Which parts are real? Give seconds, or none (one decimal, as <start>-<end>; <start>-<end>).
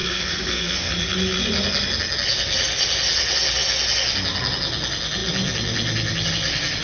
0.9-6.8